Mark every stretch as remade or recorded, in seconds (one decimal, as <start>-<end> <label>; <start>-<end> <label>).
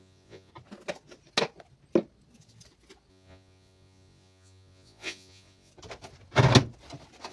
0.0-0.5 remade; 0.5-3.1 recorded; 3.1-5.7 remade; 5.7-7.3 recorded